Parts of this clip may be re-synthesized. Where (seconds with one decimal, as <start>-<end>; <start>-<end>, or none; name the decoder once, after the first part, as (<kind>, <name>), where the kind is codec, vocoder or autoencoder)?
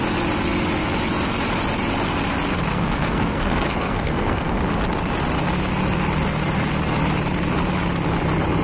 2.7-4.6 (codec, SNAC)